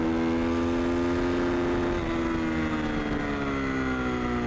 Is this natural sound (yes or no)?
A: yes